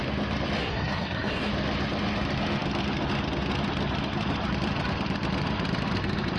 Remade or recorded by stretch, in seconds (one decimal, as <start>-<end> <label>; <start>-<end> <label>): 0.0-0.6 recorded; 0.6-1.5 remade; 1.5-6.4 recorded